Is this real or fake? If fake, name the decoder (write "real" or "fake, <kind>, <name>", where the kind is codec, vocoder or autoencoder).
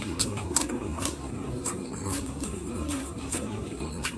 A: fake, codec, SNAC